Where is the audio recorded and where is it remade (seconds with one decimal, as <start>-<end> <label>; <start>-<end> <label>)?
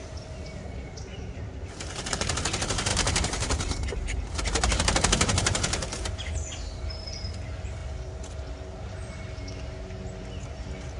0.0-1.1 recorded; 1.1-2.1 remade; 2.1-2.9 recorded; 2.9-7.3 remade; 7.3-11.0 recorded